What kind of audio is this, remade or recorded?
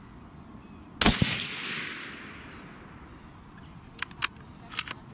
recorded